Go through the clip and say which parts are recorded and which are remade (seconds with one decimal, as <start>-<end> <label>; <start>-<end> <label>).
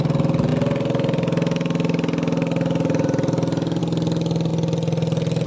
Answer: 0.0-5.5 recorded